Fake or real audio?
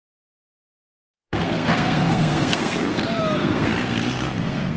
fake